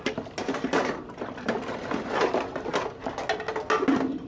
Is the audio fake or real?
real